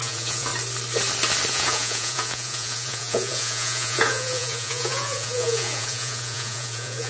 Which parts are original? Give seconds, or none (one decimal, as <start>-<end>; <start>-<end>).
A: 0.5-1.5